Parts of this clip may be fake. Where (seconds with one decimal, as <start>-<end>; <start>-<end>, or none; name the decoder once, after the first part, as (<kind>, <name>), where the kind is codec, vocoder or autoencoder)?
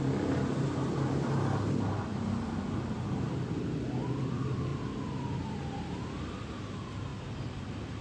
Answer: none